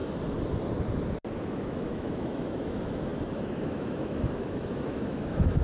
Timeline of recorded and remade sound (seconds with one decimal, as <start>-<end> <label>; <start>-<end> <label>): 0.0-1.4 recorded; 1.4-5.6 remade